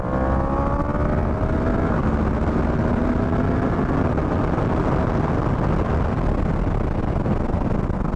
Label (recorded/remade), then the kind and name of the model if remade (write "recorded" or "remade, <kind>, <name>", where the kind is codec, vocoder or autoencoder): recorded